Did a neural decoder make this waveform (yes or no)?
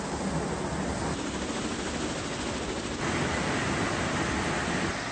no